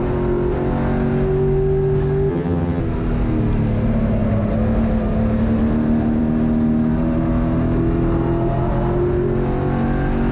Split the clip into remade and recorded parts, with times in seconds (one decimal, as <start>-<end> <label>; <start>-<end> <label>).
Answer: 0.0-2.3 recorded; 2.3-2.8 remade; 2.8-10.3 recorded